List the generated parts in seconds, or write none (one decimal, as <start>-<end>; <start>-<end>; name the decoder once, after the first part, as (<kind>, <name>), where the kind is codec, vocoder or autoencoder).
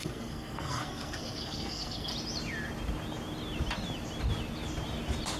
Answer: 0.0-2.1 (codec, SNAC)